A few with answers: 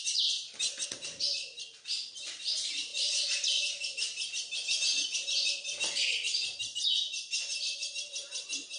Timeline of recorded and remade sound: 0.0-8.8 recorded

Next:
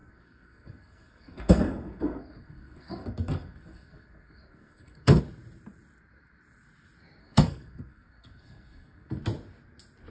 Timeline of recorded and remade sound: 0.0-5.2 remade; 5.2-7.2 recorded; 7.2-9.2 remade; 9.2-10.1 recorded

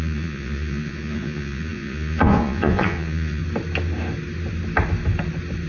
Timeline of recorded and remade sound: 0.0-3.4 remade; 3.4-5.7 recorded

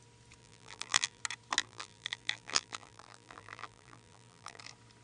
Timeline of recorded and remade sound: 0.0-0.4 recorded; 0.4-1.2 remade; 1.2-1.6 recorded; 1.6-4.6 remade; 4.6-5.0 recorded